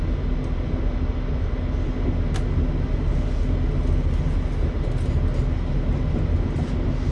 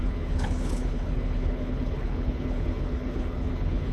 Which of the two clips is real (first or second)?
first